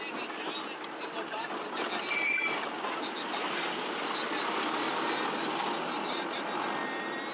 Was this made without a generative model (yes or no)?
yes